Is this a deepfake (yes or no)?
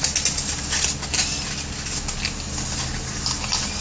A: no